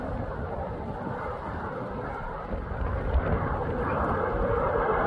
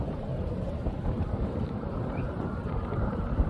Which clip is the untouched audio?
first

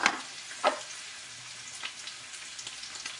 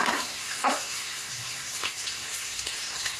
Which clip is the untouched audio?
first